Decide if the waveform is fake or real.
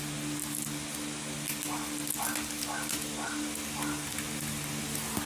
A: real